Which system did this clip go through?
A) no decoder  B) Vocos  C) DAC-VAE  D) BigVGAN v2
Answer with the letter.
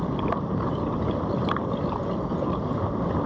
D